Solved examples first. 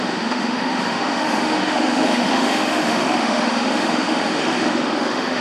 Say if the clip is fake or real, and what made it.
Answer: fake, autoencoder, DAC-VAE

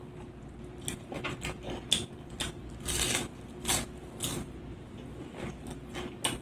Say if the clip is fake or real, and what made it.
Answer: real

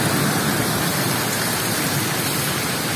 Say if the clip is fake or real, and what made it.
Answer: real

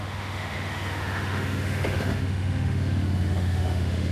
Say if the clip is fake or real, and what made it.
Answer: fake, autoencoder, DAC-VAE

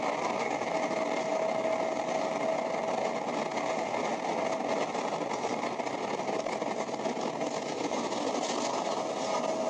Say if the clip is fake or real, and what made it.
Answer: real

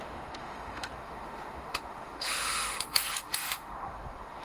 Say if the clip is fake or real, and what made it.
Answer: fake, autoencoder, DAC-VAE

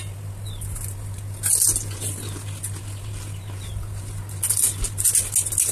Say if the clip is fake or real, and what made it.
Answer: real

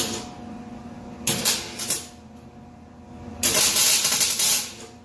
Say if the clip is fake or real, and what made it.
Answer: real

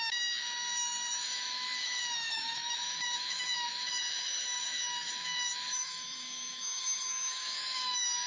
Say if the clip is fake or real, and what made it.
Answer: fake, autoencoder, DAC-VAE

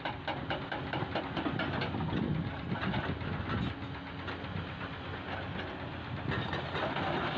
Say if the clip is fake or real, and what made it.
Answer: real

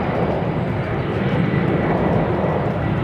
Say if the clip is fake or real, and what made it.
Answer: real